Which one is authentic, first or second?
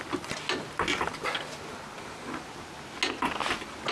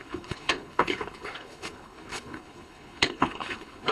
first